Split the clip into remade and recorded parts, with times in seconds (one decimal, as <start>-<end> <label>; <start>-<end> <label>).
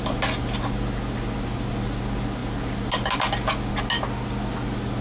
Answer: 0.0-5.0 recorded